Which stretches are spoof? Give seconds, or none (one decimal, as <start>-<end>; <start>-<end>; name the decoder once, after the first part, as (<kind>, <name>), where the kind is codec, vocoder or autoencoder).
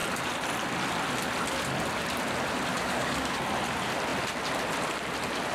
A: 2.7-3.4 (codec, DAC)